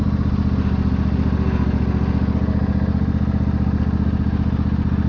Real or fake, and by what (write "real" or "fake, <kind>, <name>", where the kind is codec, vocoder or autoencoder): real